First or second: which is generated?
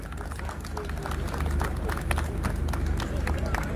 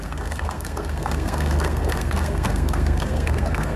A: second